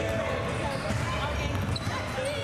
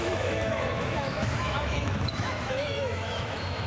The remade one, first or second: second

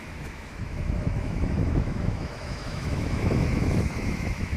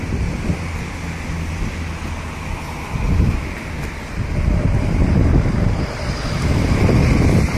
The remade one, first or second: first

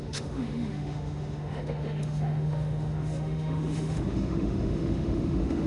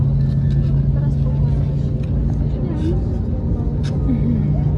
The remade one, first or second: first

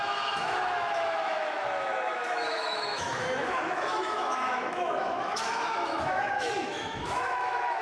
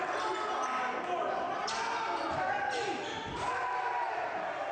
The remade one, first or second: first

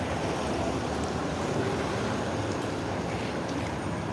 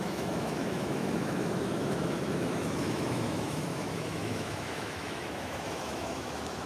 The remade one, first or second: second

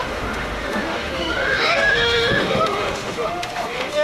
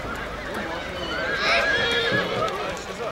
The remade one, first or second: first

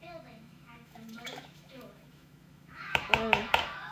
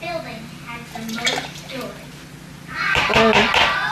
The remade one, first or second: first